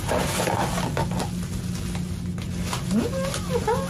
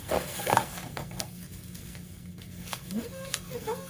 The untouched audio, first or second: first